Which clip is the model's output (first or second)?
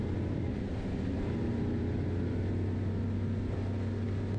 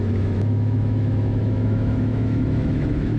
second